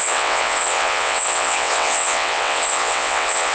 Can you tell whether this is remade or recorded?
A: remade